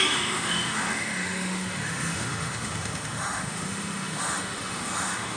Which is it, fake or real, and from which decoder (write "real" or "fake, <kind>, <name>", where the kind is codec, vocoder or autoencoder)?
fake, autoencoder, DAC-VAE